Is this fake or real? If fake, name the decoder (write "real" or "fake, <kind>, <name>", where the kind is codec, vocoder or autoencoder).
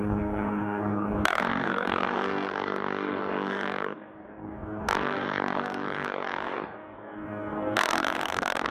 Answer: fake, codec, DAC